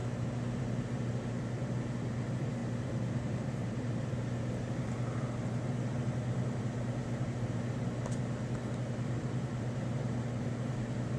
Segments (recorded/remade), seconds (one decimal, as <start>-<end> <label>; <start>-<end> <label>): 0.0-2.6 recorded; 2.6-4.1 remade; 4.1-7.0 recorded; 7.0-7.5 remade; 7.5-11.2 recorded